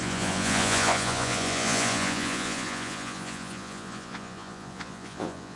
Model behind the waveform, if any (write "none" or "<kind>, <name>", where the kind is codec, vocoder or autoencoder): vocoder, Vocos